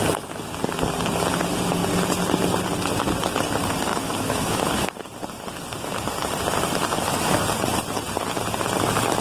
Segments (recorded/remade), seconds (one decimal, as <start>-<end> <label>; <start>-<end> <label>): 0.0-3.9 recorded; 3.9-4.9 remade; 4.9-9.2 recorded